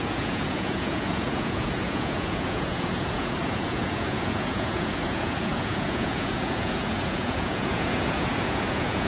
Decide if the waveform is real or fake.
fake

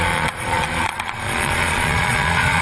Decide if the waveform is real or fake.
fake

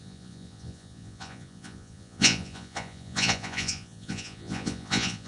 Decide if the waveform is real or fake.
fake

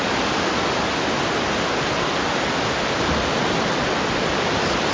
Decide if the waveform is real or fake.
real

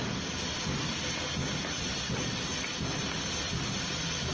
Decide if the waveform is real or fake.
real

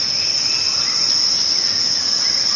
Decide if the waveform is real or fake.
real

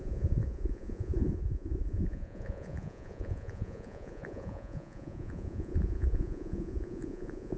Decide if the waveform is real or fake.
fake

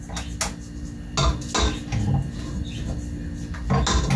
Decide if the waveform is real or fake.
real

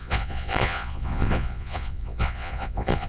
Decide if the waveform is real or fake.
fake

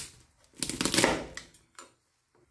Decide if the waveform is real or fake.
real